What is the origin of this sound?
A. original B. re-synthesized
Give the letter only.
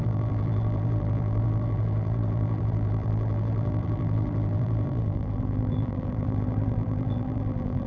B